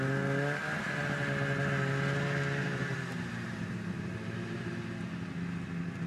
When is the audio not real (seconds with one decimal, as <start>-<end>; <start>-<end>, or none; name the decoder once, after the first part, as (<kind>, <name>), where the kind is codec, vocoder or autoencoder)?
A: 2.6-4.7 (vocoder, BigVGAN v2)